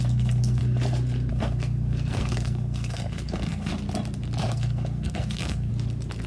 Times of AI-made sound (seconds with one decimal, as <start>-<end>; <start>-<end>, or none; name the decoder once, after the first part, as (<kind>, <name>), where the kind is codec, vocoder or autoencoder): 0.0-0.6 (codec, SNAC); 1.3-3.7; 4.4-5.7